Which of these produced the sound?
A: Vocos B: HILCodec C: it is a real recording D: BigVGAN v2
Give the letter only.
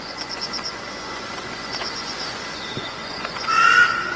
A